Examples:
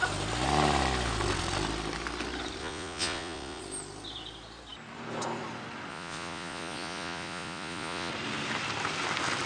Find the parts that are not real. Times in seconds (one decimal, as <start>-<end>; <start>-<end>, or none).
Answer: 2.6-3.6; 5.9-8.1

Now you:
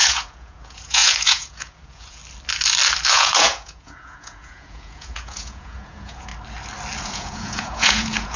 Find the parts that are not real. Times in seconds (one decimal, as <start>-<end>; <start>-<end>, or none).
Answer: 0.0-2.2; 3.1-6.3; 7.0-8.4

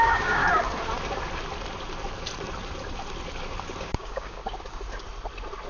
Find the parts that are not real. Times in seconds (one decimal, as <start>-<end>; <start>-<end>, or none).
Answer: 0.0-0.4; 3.8-4.4

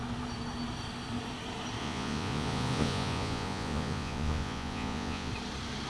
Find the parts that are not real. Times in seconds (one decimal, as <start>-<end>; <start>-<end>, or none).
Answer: 1.8-5.3

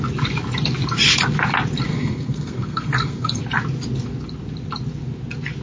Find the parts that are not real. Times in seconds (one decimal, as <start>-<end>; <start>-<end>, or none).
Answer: 1.9-3.4